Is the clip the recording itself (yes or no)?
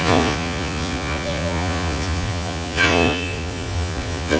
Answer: no